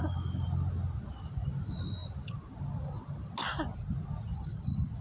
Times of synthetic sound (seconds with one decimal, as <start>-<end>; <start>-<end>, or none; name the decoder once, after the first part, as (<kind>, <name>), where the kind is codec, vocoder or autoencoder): none